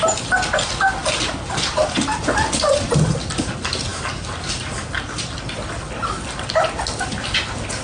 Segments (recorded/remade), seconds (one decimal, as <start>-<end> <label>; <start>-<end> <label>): 0.0-7.8 recorded